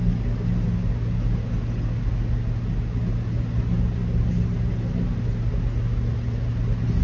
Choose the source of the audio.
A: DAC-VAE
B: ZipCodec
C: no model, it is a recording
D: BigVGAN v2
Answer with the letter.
C